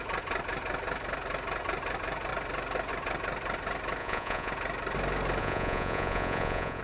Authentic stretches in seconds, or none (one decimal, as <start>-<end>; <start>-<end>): 0.0-4.0; 4.5-5.4